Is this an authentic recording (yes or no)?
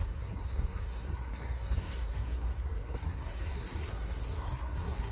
no